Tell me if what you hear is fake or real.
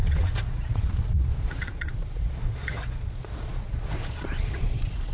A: fake